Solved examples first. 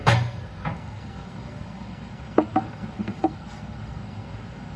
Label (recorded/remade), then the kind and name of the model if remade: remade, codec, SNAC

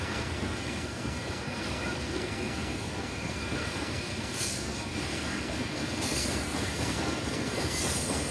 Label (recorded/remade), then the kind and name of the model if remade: remade, codec, SNAC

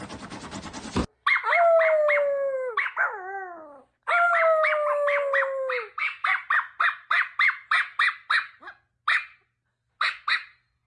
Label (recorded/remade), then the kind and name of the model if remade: recorded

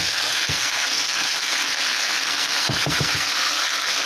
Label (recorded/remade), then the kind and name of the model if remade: remade, codec, SNAC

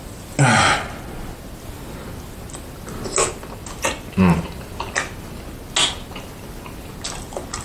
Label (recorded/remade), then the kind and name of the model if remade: recorded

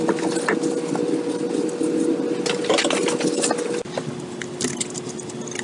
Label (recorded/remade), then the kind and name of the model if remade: recorded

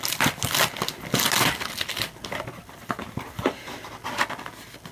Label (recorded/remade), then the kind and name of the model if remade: recorded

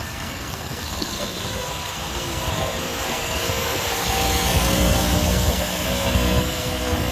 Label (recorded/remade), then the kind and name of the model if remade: remade, codec, SNAC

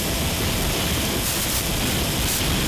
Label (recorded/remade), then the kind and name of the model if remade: recorded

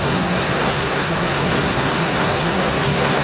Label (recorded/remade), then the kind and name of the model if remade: remade, codec, SNAC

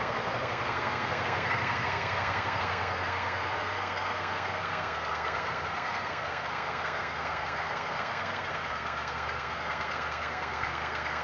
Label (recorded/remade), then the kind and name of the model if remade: remade, codec, SNAC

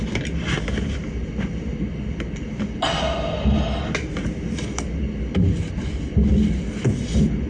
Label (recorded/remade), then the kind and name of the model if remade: recorded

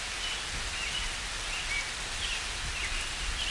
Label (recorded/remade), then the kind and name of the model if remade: recorded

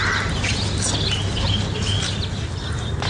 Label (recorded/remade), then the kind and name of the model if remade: recorded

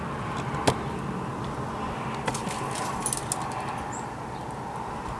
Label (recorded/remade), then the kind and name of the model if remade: recorded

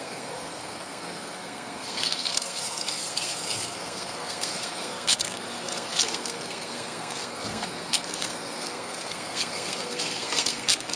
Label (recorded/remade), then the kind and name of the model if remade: remade, codec, SNAC